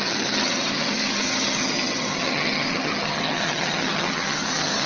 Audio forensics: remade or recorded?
remade